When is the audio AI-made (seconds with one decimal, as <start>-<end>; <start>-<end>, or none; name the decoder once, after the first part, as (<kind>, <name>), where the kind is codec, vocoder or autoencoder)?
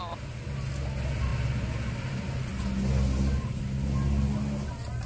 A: none